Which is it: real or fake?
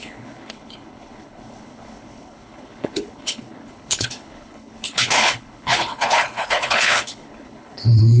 fake